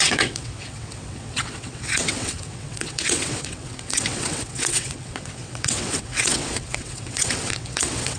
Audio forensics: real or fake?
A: fake